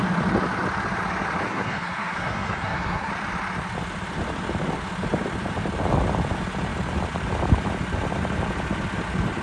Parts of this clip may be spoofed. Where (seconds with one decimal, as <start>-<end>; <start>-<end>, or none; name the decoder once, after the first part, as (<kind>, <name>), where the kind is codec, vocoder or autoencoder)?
1.5-3.1 (codec, SNAC)